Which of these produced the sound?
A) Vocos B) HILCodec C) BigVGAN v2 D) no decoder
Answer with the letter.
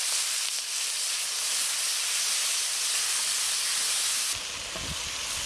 D